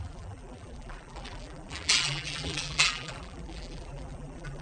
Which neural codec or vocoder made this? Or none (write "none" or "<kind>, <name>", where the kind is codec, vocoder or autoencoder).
vocoder, BigVGAN v2